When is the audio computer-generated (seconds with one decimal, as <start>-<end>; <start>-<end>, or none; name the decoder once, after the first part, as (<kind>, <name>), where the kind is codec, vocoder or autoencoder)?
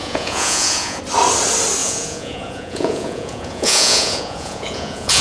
0.0-1.0 (vocoder, Vocos); 1.8-5.2